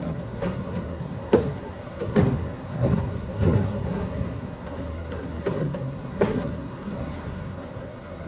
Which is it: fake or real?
fake